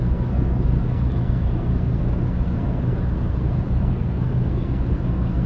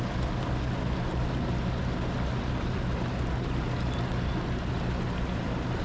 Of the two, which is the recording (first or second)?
second